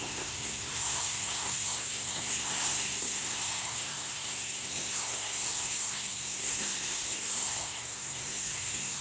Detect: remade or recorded remade